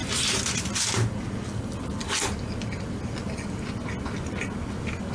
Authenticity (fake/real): real